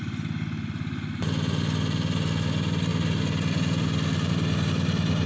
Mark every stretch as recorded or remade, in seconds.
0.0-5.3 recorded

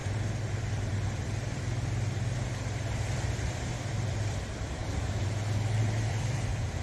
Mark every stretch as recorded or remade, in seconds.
0.0-4.8 remade; 4.8-6.1 recorded; 6.1-6.8 remade

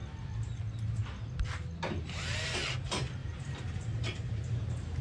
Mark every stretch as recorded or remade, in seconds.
0.0-3.2 recorded; 3.2-5.0 remade